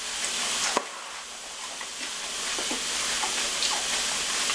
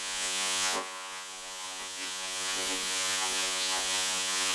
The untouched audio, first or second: first